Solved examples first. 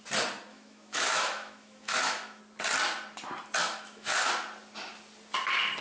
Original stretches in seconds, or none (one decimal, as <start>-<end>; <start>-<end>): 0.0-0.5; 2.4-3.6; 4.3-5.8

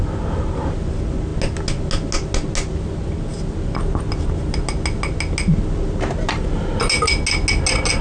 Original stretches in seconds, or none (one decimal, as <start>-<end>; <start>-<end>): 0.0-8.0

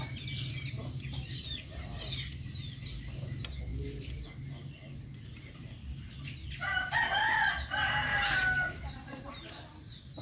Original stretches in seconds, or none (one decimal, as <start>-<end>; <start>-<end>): 0.0-10.2

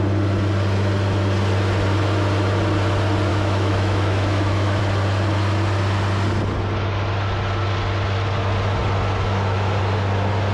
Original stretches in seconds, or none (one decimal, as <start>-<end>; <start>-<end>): 0.0-3.3; 4.8-10.5